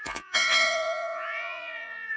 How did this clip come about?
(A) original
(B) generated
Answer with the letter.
B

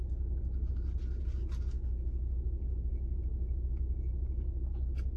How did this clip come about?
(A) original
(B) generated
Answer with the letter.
A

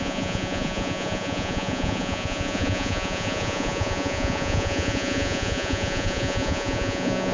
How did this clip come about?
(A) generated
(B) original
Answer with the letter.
A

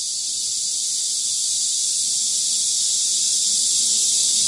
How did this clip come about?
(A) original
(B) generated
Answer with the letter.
A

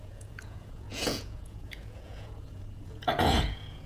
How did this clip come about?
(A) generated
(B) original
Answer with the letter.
A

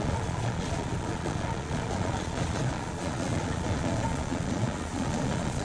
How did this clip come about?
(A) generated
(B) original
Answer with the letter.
A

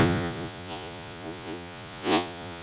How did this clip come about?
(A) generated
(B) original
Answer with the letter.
A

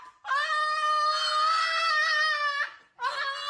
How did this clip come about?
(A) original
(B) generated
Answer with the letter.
A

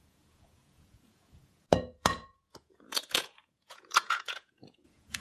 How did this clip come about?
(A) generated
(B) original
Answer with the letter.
A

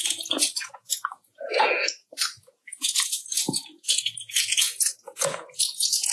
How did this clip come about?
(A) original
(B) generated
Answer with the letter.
B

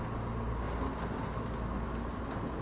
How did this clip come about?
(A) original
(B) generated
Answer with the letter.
A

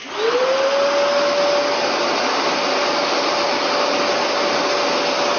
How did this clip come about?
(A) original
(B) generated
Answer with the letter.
A